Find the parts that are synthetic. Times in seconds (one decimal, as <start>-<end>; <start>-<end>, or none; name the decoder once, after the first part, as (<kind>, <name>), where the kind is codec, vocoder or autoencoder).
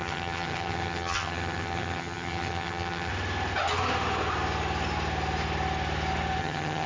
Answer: 0.0-3.1 (vocoder, HiFi-GAN); 6.4-6.9